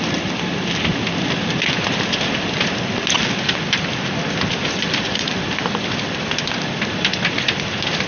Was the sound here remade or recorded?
recorded